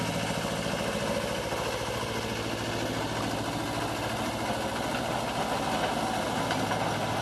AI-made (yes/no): no